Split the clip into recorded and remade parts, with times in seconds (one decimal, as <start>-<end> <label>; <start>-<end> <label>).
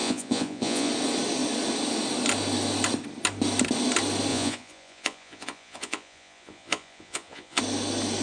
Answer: 0.0-0.9 remade; 0.9-4.3 recorded; 4.3-7.6 remade; 7.6-8.2 recorded